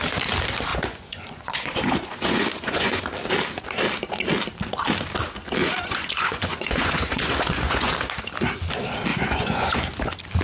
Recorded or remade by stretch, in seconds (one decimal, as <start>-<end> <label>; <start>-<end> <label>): 0.0-0.7 recorded; 0.7-3.0 remade; 3.0-5.6 recorded; 5.6-7.9 remade; 7.9-9.1 recorded; 9.1-9.8 remade; 9.8-10.4 recorded